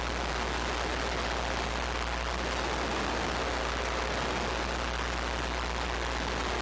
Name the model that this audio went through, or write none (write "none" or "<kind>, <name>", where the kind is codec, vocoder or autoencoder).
none